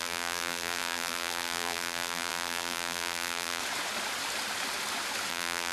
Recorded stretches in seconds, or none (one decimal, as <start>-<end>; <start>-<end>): 3.6-5.3